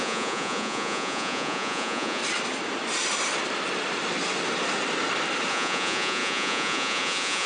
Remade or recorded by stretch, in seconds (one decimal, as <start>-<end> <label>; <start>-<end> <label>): 0.0-2.2 remade; 2.2-5.5 recorded; 5.5-7.5 remade

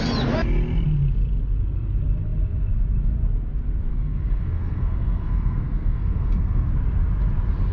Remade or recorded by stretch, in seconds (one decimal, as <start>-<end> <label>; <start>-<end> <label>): 0.0-3.9 recorded; 3.9-6.7 remade; 6.7-7.7 recorded